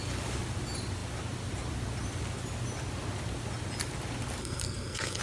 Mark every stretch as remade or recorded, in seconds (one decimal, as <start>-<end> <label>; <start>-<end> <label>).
0.0-4.4 recorded; 4.4-5.2 remade